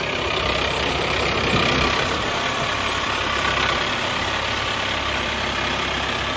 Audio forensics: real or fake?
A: fake